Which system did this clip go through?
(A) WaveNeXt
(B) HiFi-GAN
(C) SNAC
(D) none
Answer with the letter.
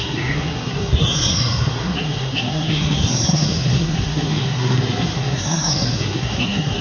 C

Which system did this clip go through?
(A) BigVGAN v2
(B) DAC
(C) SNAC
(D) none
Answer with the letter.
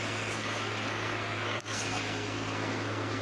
C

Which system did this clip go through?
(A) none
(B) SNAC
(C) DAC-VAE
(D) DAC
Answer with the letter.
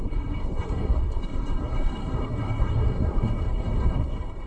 B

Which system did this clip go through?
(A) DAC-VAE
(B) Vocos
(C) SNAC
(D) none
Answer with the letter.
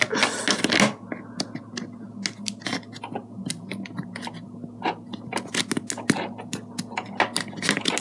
D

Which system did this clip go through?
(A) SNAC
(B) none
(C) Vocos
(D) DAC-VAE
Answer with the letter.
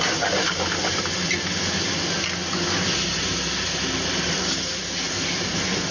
B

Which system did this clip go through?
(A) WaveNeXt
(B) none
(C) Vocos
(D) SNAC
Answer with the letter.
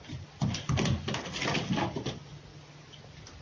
B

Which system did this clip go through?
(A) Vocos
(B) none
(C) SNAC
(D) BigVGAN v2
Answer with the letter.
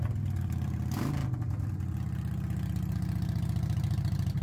B